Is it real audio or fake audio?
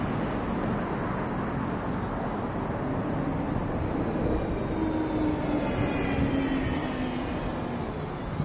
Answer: real